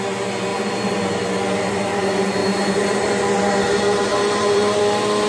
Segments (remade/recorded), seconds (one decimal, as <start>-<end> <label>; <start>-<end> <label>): 0.0-0.5 recorded; 0.5-1.0 remade; 1.0-2.4 recorded; 2.4-3.1 remade; 3.1-4.1 recorded; 4.1-4.8 remade; 4.8-5.3 recorded